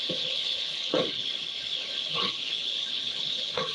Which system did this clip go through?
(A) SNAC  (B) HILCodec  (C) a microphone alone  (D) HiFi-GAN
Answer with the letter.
B